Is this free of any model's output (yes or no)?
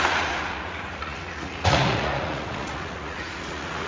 no